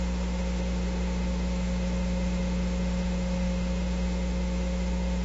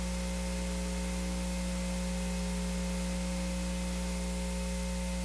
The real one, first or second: second